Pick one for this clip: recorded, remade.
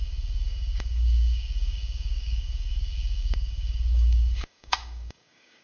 remade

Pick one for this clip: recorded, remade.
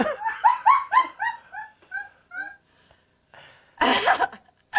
recorded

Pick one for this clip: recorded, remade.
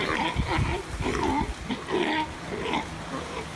recorded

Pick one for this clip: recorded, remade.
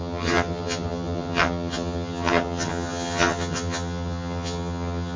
remade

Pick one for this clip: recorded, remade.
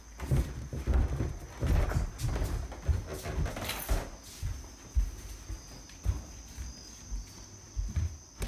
recorded